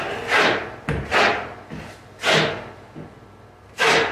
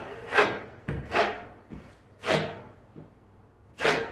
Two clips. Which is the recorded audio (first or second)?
first